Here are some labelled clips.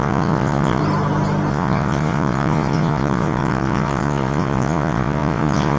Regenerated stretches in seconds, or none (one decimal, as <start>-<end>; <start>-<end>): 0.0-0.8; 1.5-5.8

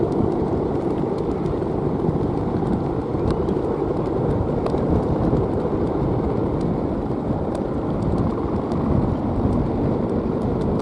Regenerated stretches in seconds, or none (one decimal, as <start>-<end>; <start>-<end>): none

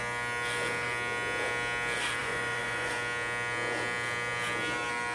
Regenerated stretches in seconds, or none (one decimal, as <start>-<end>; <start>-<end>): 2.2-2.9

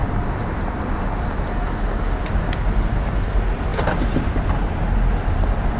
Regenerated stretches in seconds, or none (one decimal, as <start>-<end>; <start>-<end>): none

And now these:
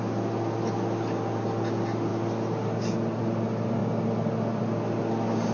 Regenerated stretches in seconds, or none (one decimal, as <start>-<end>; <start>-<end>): none

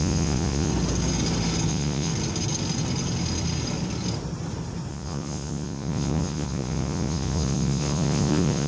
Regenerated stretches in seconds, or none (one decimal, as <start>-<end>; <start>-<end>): 0.0-0.7; 1.7-2.1; 4.9-8.7

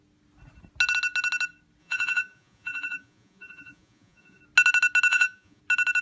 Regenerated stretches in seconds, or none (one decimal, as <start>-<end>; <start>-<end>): 1.8-4.4; 5.1-5.6